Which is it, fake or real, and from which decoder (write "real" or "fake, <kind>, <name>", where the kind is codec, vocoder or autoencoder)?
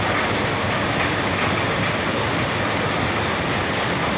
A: real